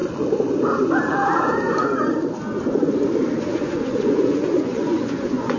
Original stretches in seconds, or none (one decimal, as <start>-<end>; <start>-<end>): 0.0-3.4